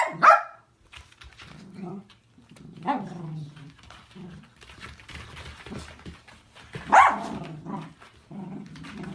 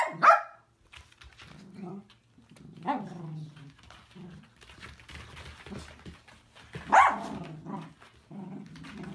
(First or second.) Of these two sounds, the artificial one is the first